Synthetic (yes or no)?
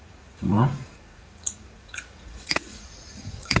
yes